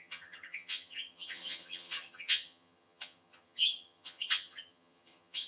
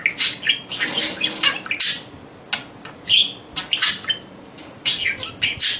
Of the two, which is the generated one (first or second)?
first